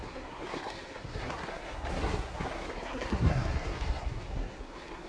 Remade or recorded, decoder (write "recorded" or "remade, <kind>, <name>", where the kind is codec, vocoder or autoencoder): remade, codec, SNAC